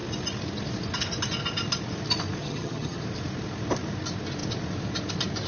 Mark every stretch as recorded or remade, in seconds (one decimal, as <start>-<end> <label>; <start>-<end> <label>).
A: 0.0-2.4 recorded; 2.4-3.0 remade; 3.0-5.5 recorded

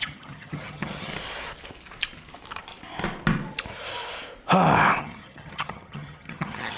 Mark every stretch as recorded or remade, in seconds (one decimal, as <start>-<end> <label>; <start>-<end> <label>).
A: 0.0-1.1 remade; 1.1-5.0 recorded; 5.0-6.8 remade